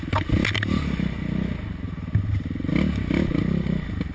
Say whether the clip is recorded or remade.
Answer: recorded